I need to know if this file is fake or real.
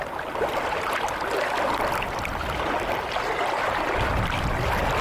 real